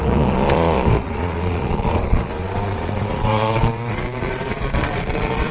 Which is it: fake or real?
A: fake